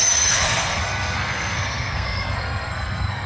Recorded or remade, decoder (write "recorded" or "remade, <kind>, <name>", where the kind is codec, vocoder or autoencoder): remade, codec, SNAC